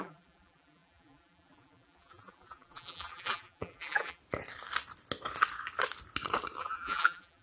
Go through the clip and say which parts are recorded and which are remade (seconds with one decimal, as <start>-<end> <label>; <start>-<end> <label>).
0.0-4.2 remade; 4.2-6.6 recorded; 6.6-7.4 remade